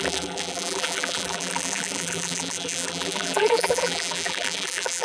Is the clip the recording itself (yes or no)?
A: no